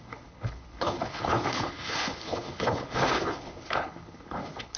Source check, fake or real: fake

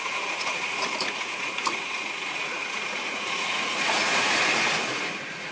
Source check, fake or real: fake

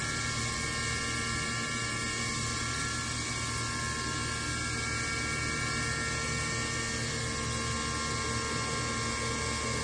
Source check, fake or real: real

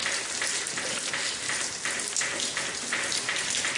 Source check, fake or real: real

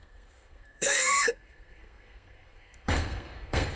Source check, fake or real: fake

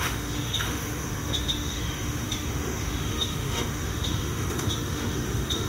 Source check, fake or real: fake